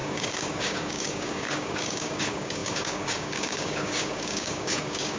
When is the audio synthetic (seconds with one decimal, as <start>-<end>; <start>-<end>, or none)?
0.0-5.2